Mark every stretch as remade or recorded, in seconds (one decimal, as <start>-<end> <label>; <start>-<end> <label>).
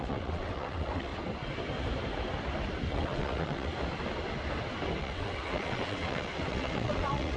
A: 0.0-1.1 remade; 1.1-2.9 recorded; 2.9-3.7 remade; 3.7-5.0 recorded; 5.0-7.4 remade